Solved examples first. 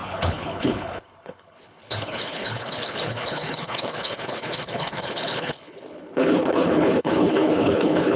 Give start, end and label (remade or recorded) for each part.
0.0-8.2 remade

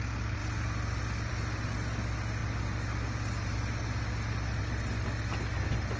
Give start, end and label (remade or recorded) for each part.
0.0-6.0 recorded

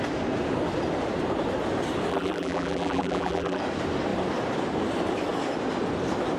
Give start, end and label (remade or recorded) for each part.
0.0-2.1 recorded; 2.1-3.6 remade; 3.6-6.4 recorded

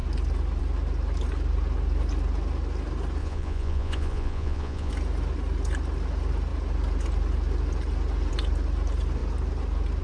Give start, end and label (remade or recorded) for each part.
0.0-3.2 recorded; 3.2-4.9 remade; 4.9-10.0 recorded

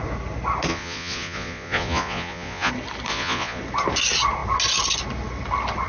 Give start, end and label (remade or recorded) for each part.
0.0-0.7 recorded; 0.7-2.7 remade; 2.7-3.1 recorded; 3.1-3.6 remade; 3.6-5.9 recorded

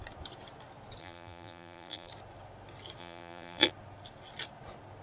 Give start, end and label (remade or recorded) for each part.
0.0-1.0 recorded; 1.0-2.1 remade; 2.1-3.0 recorded; 3.0-3.7 remade; 3.7-5.0 recorded